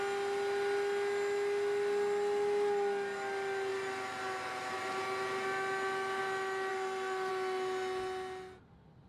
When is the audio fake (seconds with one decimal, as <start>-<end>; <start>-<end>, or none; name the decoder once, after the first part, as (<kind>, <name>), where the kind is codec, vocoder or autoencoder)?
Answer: 6.7-7.3 (codec, SNAC)